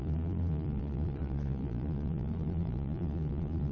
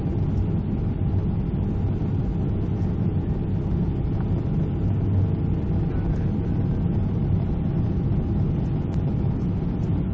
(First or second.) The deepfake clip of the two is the first